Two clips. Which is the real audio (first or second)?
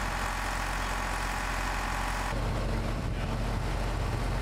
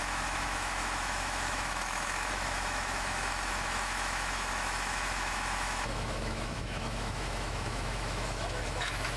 first